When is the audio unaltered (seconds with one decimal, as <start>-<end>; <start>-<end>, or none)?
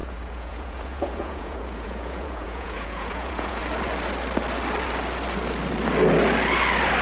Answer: 3.6-7.0